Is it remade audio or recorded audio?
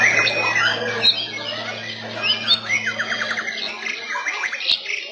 recorded